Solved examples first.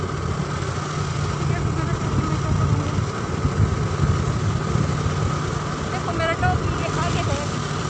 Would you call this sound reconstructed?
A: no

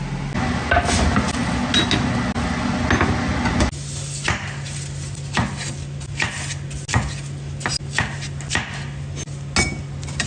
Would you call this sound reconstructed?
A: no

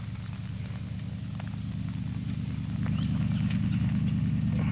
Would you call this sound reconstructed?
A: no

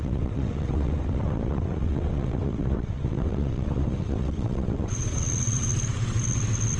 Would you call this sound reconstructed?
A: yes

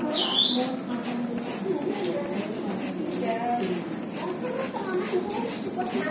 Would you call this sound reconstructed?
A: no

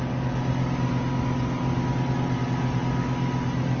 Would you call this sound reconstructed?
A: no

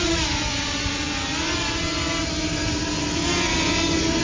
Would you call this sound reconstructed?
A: no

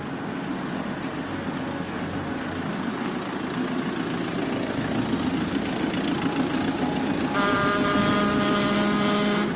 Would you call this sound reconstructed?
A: no